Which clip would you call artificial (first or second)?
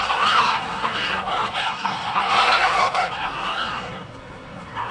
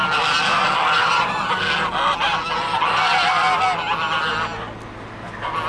first